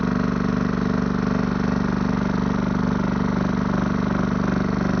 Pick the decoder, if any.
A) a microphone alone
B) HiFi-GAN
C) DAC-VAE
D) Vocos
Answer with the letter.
A